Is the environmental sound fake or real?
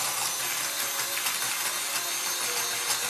real